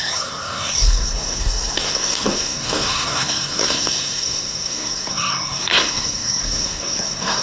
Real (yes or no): no